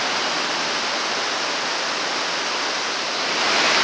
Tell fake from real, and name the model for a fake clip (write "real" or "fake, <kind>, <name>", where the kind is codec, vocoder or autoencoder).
real